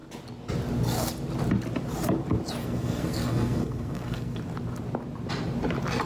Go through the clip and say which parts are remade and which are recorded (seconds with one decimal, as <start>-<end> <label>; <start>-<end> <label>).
0.0-2.6 recorded; 2.6-4.4 remade; 4.4-6.1 recorded